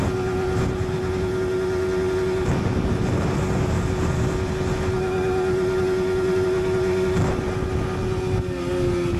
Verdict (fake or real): real